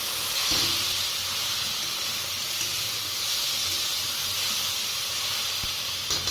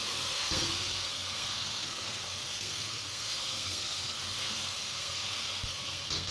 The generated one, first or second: second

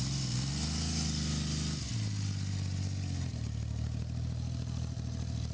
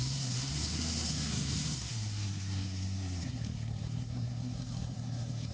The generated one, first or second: second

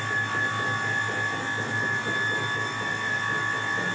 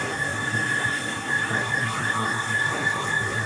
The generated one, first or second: second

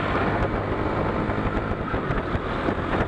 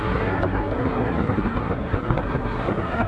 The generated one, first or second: second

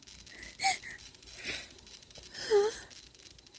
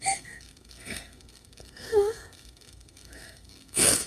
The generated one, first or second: second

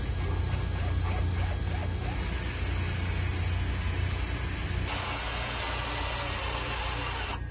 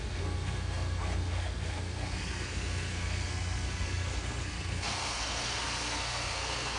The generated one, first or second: second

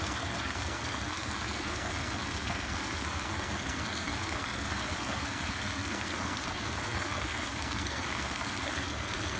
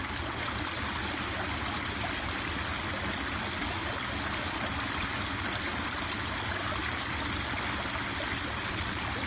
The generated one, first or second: first